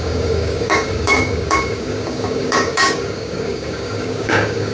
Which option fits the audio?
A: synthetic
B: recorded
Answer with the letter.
A